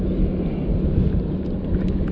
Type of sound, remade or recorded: recorded